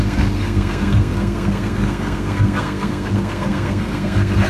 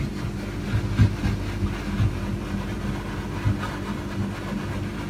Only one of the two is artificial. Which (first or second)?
first